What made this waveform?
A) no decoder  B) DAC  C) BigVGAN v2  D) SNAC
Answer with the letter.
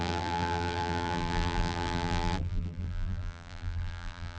C